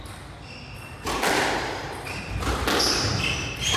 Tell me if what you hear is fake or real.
real